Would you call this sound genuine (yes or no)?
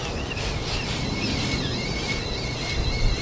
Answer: yes